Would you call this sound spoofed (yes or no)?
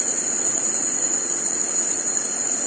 yes